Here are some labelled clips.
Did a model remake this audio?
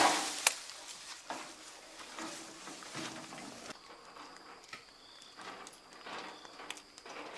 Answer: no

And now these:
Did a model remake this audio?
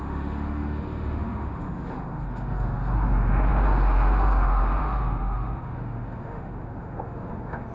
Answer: yes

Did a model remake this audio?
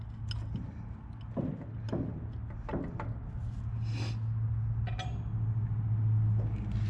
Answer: no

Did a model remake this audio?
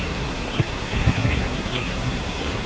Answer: yes